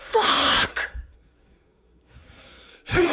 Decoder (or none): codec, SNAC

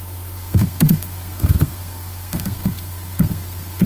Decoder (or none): codec, SNAC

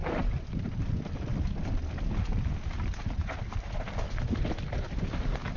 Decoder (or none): none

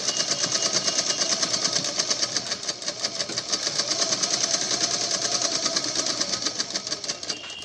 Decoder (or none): none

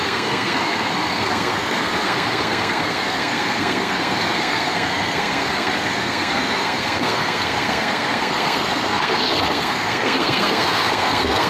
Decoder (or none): codec, SNAC